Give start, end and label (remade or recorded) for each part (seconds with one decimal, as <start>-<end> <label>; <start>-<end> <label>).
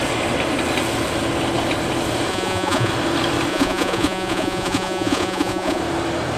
0.0-2.3 recorded; 2.3-2.9 remade; 2.9-3.5 recorded; 3.5-5.8 remade; 5.8-6.4 recorded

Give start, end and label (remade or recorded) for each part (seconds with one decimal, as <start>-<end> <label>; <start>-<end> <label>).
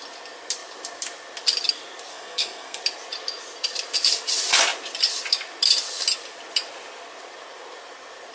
0.0-2.1 recorded; 2.1-2.8 remade; 2.8-8.3 recorded